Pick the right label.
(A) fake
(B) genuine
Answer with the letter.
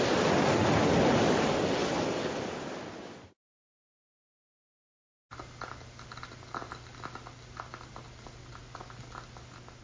B